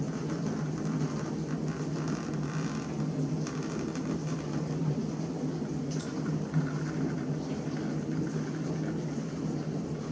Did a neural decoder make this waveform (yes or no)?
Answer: no